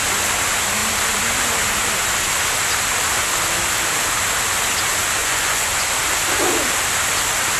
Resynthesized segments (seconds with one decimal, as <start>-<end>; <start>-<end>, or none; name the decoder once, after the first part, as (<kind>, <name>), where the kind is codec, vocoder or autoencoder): 5.2-5.9 (vocoder, Vocos)